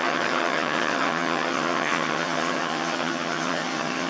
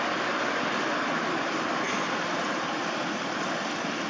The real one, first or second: second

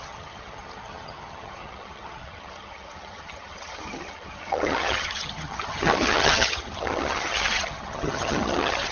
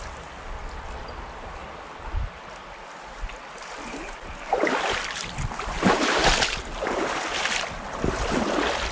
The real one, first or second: second